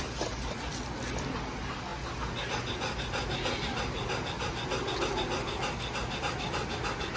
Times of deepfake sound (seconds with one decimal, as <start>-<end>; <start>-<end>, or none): none